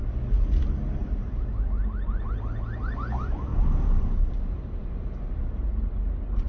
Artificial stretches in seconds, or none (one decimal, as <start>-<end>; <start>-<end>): 1.0-1.6; 3.5-5.2